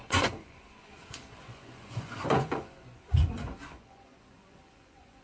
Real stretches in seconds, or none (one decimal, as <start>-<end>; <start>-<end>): none

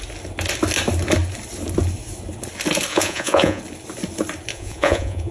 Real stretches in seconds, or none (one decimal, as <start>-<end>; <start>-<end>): 0.0-2.9; 3.6-4.5

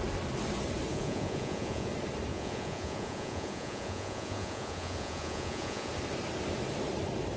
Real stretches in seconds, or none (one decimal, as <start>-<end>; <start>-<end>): 0.0-0.9; 1.9-2.3; 5.9-7.4

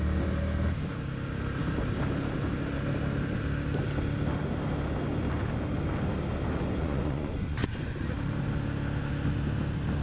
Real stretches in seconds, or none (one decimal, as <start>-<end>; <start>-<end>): 0.0-6.8; 8.0-10.0

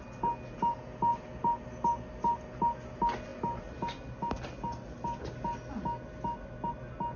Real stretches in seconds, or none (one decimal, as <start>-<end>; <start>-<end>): 0.0-7.2

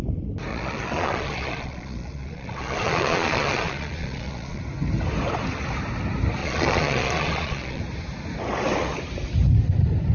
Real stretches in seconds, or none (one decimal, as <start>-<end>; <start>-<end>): 0.0-0.5; 4.6-6.4; 7.8-10.1

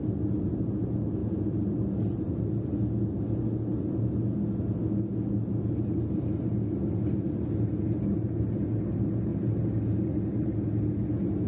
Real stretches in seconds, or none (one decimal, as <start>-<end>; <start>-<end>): 0.0-11.5

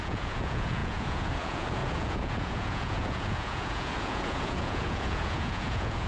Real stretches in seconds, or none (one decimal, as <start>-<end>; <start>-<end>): none